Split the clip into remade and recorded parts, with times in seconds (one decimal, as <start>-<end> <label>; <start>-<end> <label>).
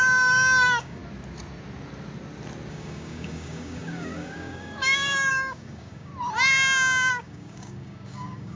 0.0-1.0 remade; 1.0-2.7 recorded; 2.7-6.1 remade; 6.1-7.1 recorded; 7.1-8.6 remade